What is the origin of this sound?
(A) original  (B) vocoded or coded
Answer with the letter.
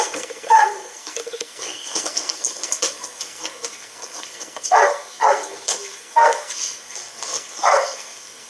B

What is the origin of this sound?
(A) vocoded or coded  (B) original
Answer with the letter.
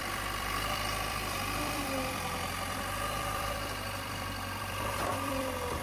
A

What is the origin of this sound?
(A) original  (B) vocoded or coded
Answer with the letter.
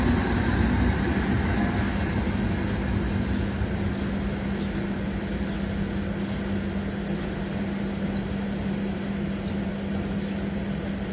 A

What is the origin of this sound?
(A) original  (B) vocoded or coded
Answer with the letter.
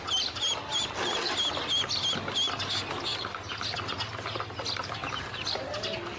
A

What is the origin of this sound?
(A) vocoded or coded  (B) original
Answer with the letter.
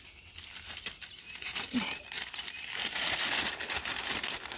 B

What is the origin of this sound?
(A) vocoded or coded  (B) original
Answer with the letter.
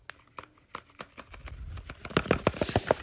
B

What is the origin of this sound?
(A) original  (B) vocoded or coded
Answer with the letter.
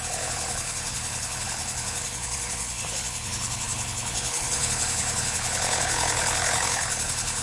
B